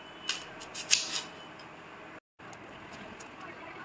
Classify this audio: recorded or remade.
recorded